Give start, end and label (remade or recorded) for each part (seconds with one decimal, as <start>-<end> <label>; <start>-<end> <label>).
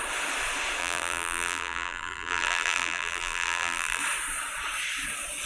0.0-0.8 recorded; 0.8-4.0 remade; 4.0-5.5 recorded